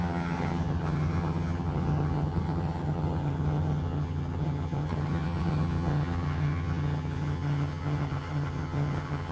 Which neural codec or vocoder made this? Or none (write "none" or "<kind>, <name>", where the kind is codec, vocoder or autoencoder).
vocoder, HiFi-GAN